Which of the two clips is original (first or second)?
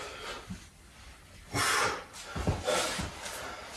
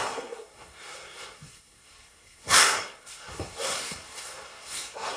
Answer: first